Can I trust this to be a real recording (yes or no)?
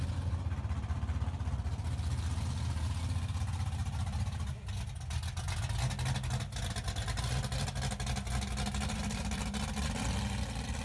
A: yes